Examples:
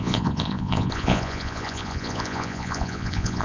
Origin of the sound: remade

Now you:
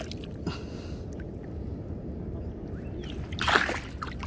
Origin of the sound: recorded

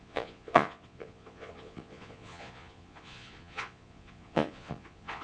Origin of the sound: remade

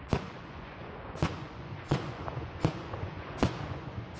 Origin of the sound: remade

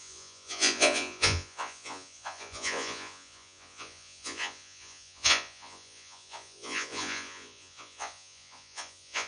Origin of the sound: remade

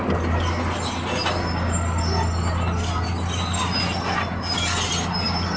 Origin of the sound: recorded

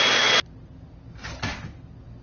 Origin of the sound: recorded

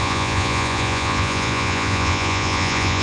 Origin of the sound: remade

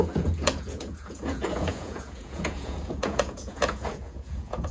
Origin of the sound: remade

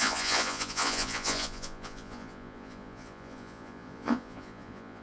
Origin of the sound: remade